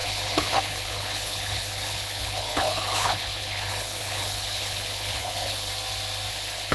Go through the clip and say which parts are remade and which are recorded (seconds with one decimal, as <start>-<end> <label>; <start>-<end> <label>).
0.0-5.7 remade; 5.7-6.3 recorded; 6.3-6.7 remade